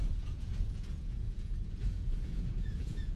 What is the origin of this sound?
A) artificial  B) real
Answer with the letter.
A